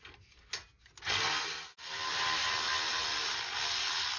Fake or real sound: real